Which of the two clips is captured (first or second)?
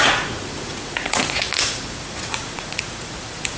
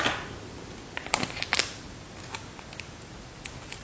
second